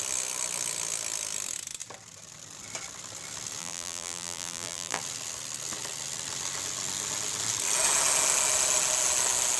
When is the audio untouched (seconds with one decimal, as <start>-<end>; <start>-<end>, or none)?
0.0-3.6; 5.0-9.6